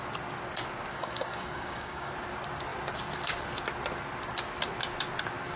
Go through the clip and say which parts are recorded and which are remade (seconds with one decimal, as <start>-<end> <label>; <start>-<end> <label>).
0.0-0.9 recorded; 0.9-2.1 remade; 2.1-5.6 recorded